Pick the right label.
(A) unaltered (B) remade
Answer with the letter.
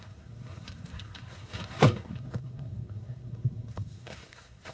B